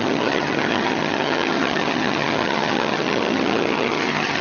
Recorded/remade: remade